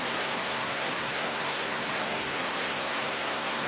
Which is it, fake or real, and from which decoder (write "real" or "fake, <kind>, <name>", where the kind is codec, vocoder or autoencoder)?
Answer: fake, codec, SNAC